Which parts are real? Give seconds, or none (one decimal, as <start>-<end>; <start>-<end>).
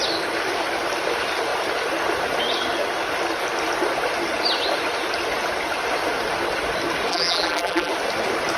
0.0-7.1; 7.9-8.6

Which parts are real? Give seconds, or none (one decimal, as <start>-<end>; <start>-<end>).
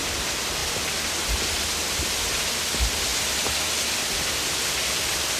0.0-5.4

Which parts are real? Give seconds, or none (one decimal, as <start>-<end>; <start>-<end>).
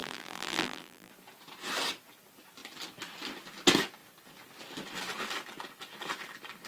1.1-6.7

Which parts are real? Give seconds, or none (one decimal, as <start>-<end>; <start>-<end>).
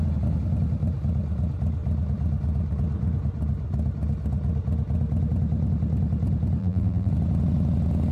0.0-6.6; 7.1-8.1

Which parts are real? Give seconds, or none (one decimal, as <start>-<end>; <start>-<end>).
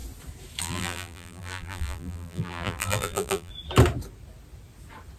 0.0-0.6; 3.5-5.2